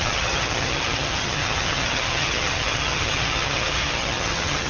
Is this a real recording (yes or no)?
no